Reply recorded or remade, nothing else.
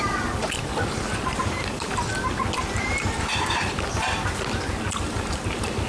recorded